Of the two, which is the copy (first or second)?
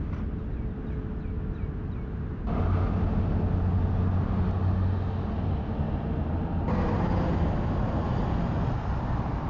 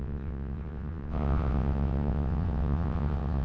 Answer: second